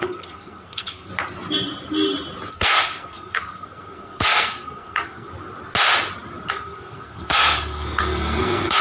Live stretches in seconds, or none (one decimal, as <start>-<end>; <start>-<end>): 1.1-2.5; 5.3-6.5